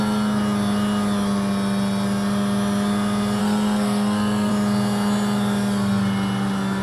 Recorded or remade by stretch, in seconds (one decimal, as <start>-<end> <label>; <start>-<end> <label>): 0.0-3.4 recorded; 3.4-4.5 remade; 4.5-6.8 recorded

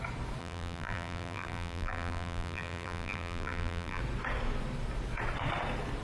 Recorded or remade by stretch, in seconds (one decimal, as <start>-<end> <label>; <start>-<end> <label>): 0.0-0.4 recorded; 0.4-4.0 remade; 4.0-6.0 recorded

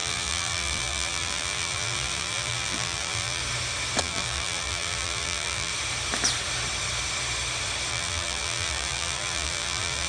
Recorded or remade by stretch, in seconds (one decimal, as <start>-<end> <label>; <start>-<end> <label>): 0.0-3.4 remade; 3.4-4.0 recorded; 4.0-5.7 remade; 5.7-7.9 recorded; 7.9-10.1 remade

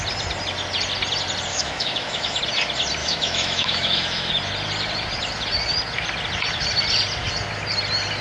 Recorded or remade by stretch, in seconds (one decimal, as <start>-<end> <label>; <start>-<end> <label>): 0.0-1.5 recorded; 1.5-2.4 remade; 2.4-3.0 recorded; 3.0-4.3 remade; 4.3-8.2 recorded

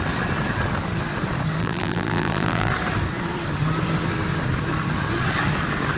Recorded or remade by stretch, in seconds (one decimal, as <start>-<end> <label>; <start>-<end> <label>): 0.0-1.6 recorded; 1.6-2.7 remade; 2.7-6.0 recorded

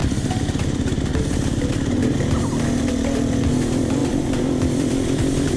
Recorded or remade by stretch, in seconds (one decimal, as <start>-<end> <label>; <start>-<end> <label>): 0.0-1.1 recorded; 1.1-2.0 remade; 2.0-2.9 recorded; 2.9-5.6 remade

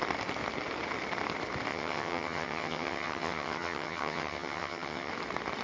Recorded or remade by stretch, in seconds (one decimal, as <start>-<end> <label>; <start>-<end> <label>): 0.0-1.7 recorded; 1.7-5.1 remade; 5.1-5.6 recorded